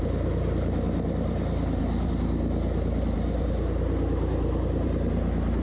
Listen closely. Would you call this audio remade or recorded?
recorded